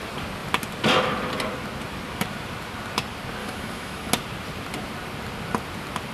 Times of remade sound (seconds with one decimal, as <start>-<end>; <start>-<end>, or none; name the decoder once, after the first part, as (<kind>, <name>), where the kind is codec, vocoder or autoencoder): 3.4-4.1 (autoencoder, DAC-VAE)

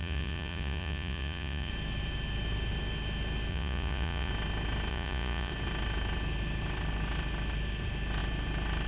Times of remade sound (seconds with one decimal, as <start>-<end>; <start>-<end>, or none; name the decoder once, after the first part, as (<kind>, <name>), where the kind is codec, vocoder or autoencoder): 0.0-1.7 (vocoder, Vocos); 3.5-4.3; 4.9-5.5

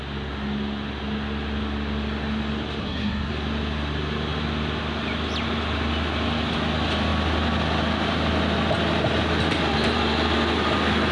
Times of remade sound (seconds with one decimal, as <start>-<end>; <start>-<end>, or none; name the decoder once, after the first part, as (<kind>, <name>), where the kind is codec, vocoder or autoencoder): 2.8-3.3 (codec, SNAC)